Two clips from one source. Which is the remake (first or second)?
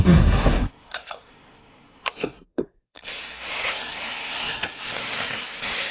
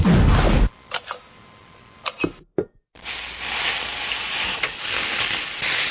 first